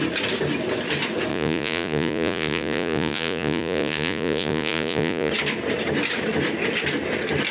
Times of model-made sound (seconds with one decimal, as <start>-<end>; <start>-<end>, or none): 1.3-5.3